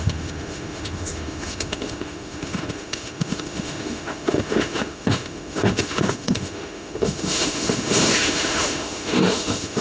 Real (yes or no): no